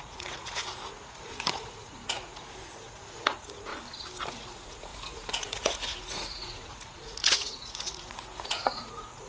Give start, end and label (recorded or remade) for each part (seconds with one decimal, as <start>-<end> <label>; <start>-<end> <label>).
0.0-3.7 remade; 3.7-4.3 recorded; 4.3-9.3 remade